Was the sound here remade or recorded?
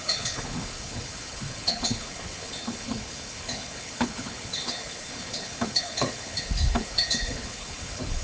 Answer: remade